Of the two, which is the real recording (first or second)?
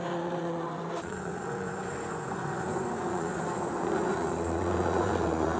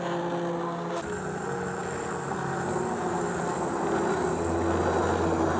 second